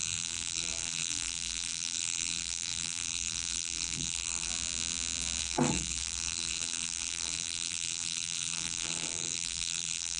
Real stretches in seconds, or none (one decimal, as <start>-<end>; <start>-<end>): 4.5-5.4